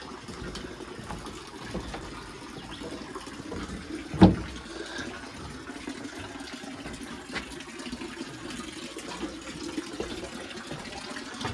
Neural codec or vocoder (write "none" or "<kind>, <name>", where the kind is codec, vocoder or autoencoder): none